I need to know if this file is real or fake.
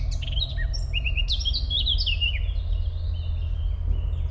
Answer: real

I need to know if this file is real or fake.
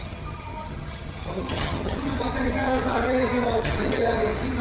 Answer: fake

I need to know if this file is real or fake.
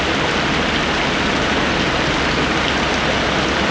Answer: real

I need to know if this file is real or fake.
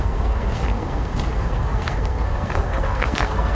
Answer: fake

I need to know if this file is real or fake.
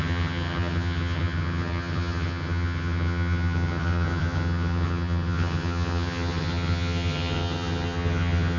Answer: fake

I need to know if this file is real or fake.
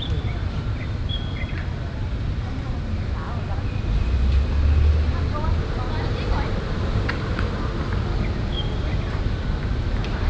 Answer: real